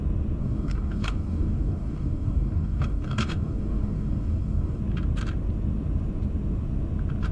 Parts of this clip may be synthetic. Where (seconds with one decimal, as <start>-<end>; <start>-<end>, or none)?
0.4-4.8